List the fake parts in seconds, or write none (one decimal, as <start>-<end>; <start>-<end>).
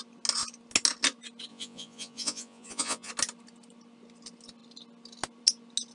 1.5-3.1